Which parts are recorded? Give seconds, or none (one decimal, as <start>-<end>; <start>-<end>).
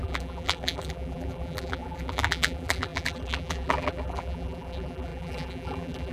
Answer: none